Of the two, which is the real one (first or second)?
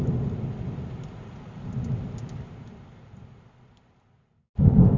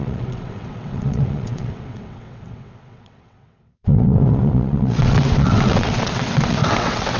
first